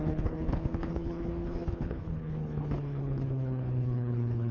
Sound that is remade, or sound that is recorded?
remade